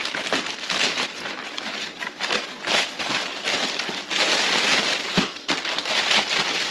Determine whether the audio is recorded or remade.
recorded